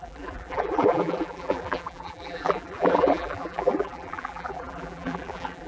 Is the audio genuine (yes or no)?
no